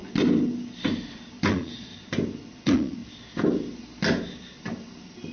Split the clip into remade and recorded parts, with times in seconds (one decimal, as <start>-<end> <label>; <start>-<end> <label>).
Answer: 0.0-1.5 recorded; 1.5-1.9 remade; 1.9-2.6 recorded; 2.6-3.0 remade; 3.0-5.3 recorded